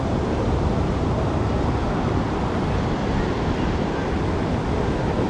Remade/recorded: recorded